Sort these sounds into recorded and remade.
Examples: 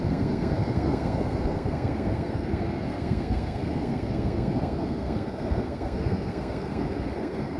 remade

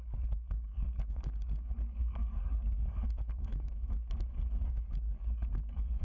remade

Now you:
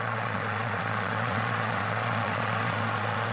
remade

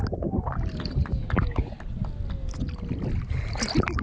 recorded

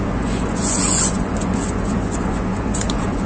remade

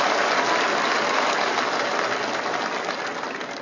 recorded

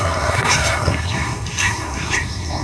remade